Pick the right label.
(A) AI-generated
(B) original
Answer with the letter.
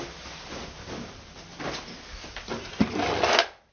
B